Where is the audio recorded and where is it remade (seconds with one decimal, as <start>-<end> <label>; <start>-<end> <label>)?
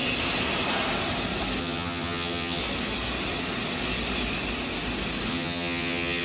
0.0-1.6 recorded; 1.6-2.6 remade; 2.6-5.3 recorded; 5.3-6.2 remade